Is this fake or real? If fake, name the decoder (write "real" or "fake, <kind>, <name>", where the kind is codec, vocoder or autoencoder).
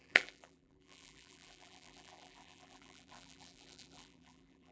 fake, vocoder, BigVGAN v2